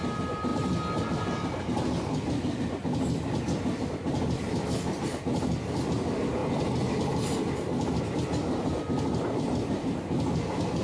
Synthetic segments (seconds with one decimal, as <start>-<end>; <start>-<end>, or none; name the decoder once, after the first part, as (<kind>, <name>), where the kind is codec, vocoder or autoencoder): none

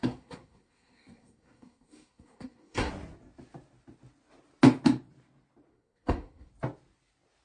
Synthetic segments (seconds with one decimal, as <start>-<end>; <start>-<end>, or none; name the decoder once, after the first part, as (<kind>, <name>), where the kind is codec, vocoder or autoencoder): 0.0-2.9 (codec, SNAC); 5.7-6.5